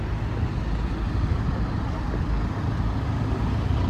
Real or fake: real